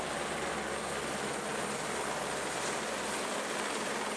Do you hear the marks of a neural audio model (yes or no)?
no